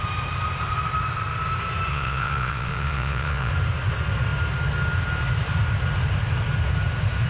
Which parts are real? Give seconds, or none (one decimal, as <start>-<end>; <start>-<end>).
0.0-1.9; 3.5-7.3